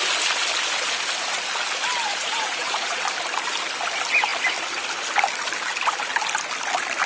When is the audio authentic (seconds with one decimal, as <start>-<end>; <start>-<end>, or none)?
0.0-2.1; 3.0-7.1